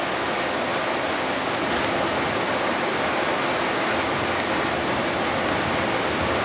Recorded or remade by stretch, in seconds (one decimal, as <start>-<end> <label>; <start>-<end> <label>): 0.0-6.4 recorded